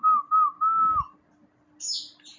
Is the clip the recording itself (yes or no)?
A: yes